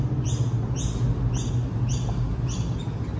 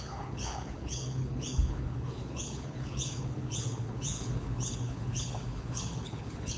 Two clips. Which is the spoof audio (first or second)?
second